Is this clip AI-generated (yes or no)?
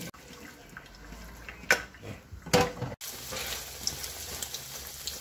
no